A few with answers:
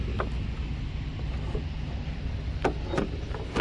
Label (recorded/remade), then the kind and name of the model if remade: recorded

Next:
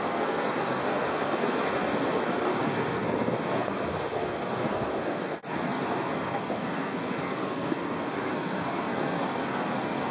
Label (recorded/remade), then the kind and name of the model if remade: remade, codec, SNAC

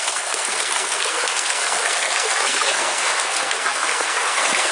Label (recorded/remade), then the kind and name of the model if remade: remade, codec, SNAC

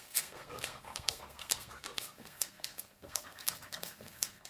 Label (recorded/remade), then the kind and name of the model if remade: remade, codec, SNAC